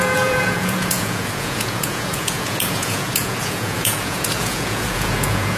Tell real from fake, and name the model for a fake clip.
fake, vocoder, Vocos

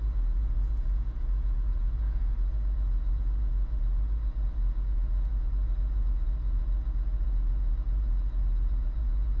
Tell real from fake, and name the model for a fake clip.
fake, vocoder, Vocos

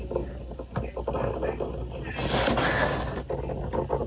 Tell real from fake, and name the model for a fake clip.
real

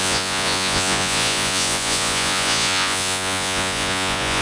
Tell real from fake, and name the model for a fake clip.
fake, vocoder, Vocos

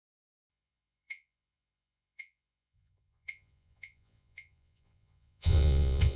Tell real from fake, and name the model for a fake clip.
fake, vocoder, Vocos